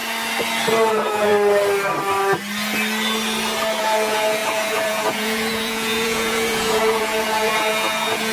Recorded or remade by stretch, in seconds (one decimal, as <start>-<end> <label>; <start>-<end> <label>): 0.0-0.9 recorded; 0.9-1.3 remade; 1.3-3.8 recorded; 3.8-8.3 remade